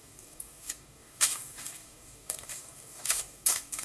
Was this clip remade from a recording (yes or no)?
yes